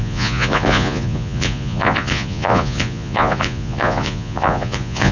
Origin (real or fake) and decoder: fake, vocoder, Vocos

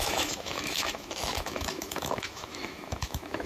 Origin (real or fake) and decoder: fake, autoencoder, DAC-VAE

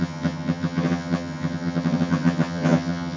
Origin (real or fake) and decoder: fake, vocoder, HiFi-GAN